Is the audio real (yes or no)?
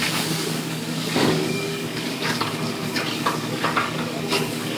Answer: no